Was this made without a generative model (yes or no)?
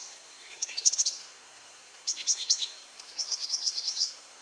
no